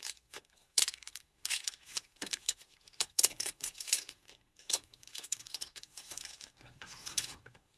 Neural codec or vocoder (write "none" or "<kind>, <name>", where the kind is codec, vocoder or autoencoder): codec, SNAC